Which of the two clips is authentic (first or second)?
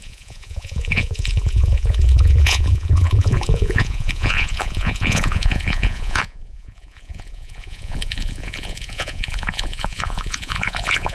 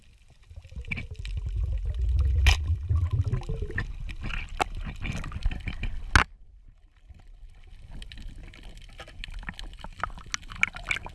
second